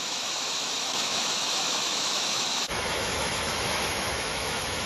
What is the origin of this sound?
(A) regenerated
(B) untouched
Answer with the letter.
A